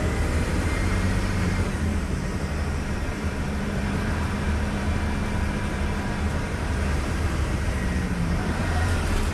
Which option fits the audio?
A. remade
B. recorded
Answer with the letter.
A